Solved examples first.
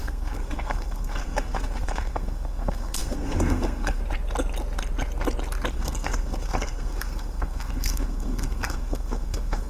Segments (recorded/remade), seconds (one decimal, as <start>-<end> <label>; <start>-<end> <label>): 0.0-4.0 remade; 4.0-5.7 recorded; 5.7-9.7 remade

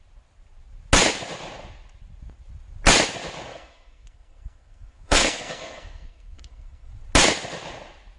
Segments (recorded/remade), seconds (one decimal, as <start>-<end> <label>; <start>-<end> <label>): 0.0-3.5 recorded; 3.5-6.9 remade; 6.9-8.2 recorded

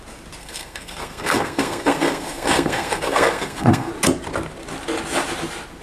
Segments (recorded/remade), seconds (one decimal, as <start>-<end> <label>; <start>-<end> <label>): 0.0-0.4 recorded; 0.4-3.9 remade; 3.9-5.8 recorded

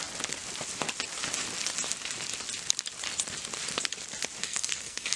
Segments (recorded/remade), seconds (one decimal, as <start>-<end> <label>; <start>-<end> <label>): 0.0-4.4 recorded; 4.4-5.2 remade

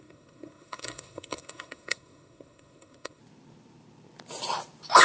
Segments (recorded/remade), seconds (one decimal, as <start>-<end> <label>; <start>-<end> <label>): 0.0-3.2 remade; 3.2-5.0 recorded

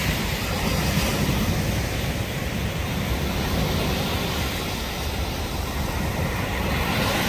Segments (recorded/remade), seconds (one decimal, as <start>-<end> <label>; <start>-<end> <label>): 0.0-7.3 recorded